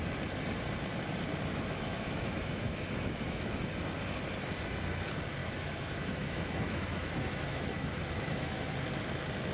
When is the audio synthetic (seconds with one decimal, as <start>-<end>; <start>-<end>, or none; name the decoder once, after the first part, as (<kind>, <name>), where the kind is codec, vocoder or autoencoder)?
1.5-3.6 (autoencoder, DAC-VAE); 5.4-8.7